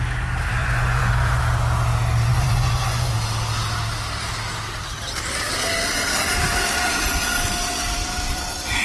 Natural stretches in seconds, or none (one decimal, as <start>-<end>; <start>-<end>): 0.0-0.6; 1.4-2.3; 3.1-8.8